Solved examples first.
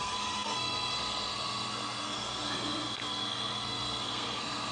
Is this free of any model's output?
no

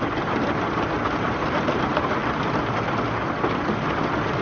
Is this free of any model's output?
yes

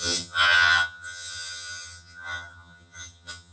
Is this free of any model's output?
no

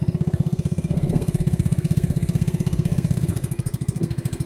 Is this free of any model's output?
no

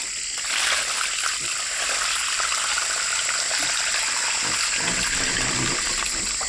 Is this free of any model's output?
yes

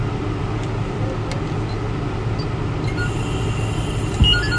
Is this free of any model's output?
yes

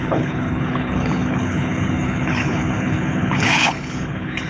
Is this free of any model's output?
no